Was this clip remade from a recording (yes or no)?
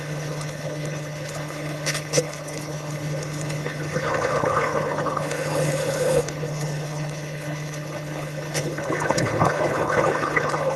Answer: yes